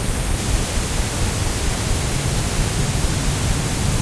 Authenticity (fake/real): real